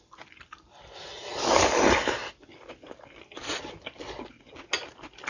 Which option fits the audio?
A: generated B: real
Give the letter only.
B